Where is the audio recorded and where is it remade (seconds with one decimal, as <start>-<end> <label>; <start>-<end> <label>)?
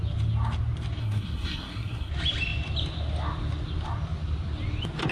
0.0-1.0 recorded; 1.0-2.1 remade; 2.1-5.1 recorded